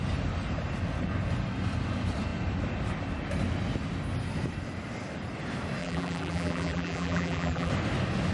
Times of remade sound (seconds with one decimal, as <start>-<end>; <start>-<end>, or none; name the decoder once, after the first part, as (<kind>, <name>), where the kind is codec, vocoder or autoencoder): 5.8-7.7 (vocoder, BigVGAN v2)